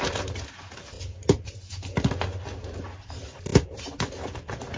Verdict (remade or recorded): recorded